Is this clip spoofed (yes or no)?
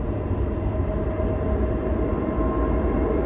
no